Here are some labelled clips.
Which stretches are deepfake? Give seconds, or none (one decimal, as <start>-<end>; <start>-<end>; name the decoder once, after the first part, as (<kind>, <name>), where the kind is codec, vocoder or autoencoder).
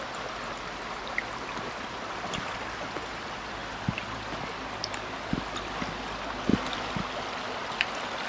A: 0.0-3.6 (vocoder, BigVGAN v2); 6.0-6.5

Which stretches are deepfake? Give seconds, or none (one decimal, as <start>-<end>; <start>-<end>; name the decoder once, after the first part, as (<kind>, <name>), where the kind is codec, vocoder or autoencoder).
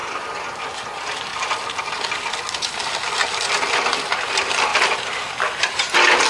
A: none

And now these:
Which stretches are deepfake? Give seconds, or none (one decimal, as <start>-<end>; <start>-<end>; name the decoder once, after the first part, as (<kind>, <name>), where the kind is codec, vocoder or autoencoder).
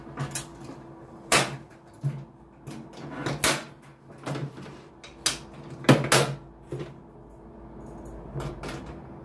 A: 0.5-1.7 (vocoder, BigVGAN v2); 4.4-4.9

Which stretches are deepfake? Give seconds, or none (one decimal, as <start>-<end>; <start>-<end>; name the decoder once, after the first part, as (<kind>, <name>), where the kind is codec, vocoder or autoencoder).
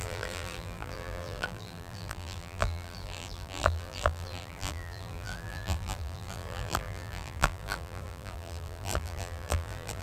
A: 0.0-10.0 (vocoder, BigVGAN v2)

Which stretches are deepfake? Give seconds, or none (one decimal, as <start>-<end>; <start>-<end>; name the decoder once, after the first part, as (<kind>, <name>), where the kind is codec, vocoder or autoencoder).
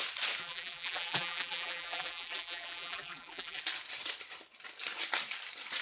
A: 0.4-3.6 (vocoder, BigVGAN v2)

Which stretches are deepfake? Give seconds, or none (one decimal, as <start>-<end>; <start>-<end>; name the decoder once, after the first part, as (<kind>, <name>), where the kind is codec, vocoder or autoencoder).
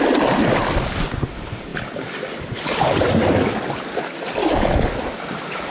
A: 1.7-4.0 (vocoder, BigVGAN v2)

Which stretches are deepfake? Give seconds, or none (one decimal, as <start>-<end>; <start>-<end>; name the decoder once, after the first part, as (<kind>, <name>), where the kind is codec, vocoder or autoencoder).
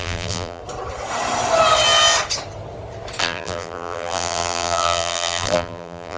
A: 0.0-0.6 (vocoder, BigVGAN v2); 3.2-6.2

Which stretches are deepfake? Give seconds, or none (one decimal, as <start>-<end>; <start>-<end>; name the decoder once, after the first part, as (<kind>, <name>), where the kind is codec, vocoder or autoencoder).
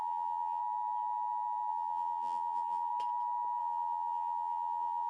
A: 0.0-0.6 (vocoder, BigVGAN v2); 1.7-2.9; 3.6-5.1